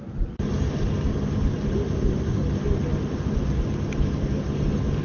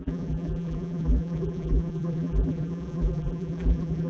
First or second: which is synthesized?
second